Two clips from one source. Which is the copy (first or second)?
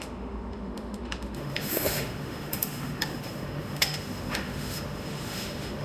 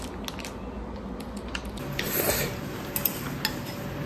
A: first